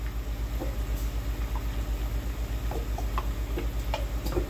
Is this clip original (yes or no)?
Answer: yes